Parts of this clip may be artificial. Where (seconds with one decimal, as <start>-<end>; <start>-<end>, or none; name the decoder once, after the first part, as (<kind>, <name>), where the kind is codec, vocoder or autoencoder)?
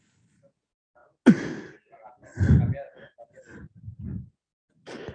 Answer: none